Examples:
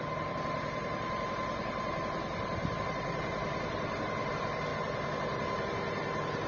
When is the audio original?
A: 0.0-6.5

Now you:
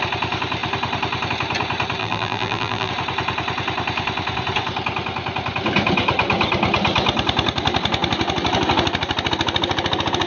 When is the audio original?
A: 0.0-2.0; 2.9-10.3

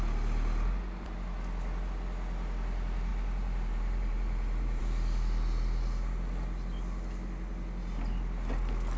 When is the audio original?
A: 0.0-3.1; 4.8-9.0

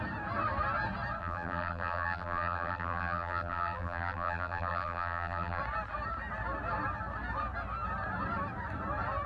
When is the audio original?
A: 0.0-1.2; 5.6-9.3

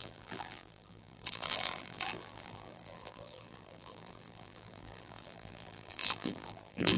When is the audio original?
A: none

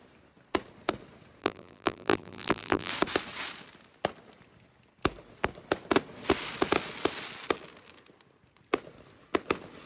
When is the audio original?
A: 0.0-1.4; 2.9-9.9

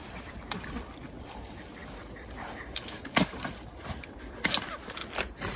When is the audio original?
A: 0.0-5.0